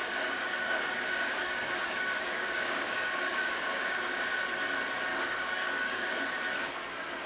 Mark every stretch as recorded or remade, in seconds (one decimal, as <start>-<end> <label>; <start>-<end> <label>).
0.0-4.4 remade; 4.4-5.1 recorded; 5.1-6.3 remade; 6.3-7.3 recorded

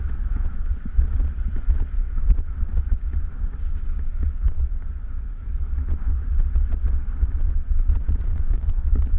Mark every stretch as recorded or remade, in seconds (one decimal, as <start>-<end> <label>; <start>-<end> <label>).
0.0-4.1 recorded; 4.1-5.5 remade; 5.5-8.3 recorded; 8.3-9.2 remade